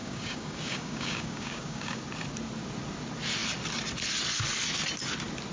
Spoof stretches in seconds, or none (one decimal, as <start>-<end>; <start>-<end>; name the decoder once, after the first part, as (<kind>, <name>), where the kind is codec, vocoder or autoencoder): 0.0-2.0 (codec, DAC)